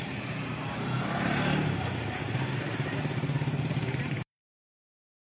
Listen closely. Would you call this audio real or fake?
fake